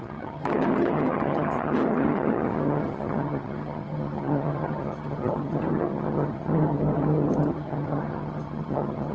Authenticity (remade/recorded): remade